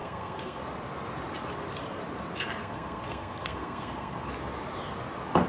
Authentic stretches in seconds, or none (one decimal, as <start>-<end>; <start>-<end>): 0.6-2.6; 4.3-5.5